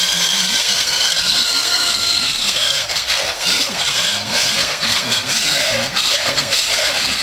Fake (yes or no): yes